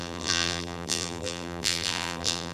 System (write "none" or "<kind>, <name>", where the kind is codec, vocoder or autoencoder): vocoder, BigVGAN v2